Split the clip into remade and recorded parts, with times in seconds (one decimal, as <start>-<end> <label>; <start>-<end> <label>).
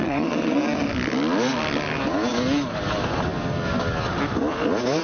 0.0-0.6 remade; 0.6-5.0 recorded